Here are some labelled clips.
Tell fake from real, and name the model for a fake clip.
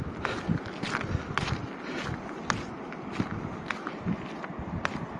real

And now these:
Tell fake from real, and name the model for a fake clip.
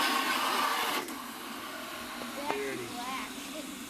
real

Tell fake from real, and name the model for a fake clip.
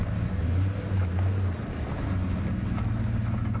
real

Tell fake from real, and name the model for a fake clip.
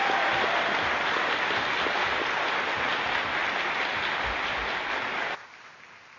real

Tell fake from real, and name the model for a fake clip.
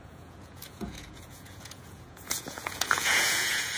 fake, vocoder, Vocos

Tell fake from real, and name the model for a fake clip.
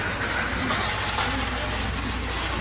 real